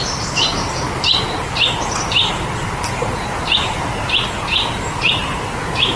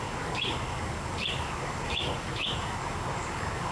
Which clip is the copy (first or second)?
second